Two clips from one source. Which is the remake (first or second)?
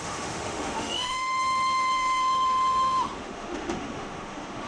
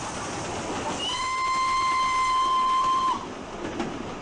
first